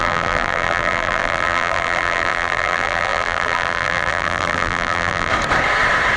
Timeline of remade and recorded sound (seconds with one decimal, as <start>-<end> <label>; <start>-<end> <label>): 0.0-5.3 remade; 5.3-6.2 recorded